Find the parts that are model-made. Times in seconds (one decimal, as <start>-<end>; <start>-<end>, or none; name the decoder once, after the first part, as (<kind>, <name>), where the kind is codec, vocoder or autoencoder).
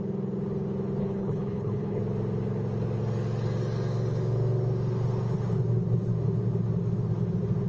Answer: 1.0-2.0 (codec, HILCodec)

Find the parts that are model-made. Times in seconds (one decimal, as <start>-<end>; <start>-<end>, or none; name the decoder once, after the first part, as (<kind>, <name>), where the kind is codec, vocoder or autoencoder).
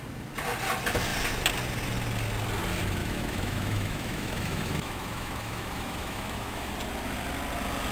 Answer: 3.0-6.7 (autoencoder, DAC-VAE)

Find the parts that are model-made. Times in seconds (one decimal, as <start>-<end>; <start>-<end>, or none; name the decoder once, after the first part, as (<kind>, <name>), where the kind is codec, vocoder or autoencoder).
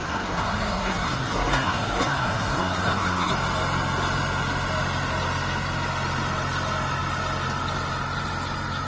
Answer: 0.0-3.3 (codec, SNAC)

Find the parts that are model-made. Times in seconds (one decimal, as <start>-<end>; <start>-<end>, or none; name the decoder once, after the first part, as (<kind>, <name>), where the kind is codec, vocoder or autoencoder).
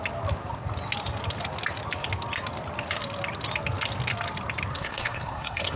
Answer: 4.7-5.8 (codec, SNAC)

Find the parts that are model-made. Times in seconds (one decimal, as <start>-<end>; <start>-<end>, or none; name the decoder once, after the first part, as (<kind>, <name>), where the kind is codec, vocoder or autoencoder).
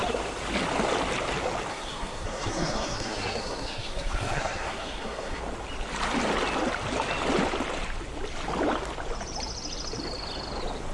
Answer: 1.7-5.4 (codec, SNAC)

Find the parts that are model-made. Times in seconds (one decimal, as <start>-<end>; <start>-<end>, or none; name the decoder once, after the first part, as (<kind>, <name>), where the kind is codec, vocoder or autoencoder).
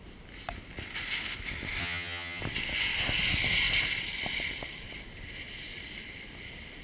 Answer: 1.8-2.4 (vocoder, HiFi-GAN)